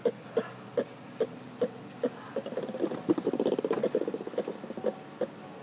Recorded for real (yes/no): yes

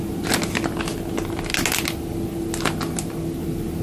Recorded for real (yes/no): yes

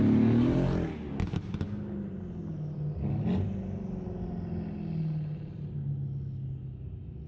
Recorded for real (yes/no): yes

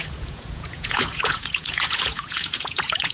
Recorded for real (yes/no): no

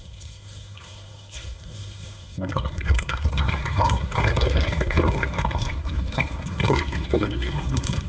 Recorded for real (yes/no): no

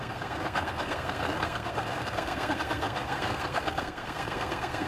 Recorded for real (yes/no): no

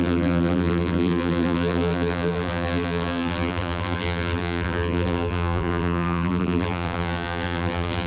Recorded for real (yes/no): no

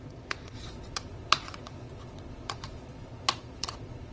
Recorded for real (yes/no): no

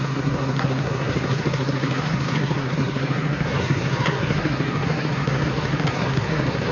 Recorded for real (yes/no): no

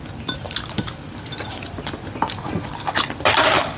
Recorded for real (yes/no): no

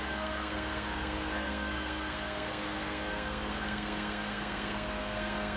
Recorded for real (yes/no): no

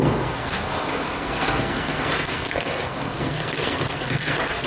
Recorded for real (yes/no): no